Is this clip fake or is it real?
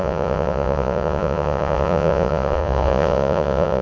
fake